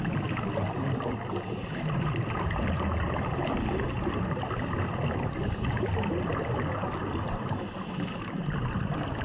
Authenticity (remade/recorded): recorded